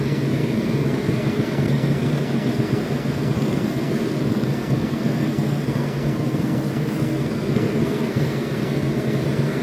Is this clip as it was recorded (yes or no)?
no